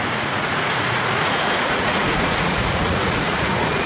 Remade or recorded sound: remade